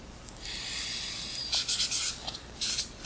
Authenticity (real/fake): real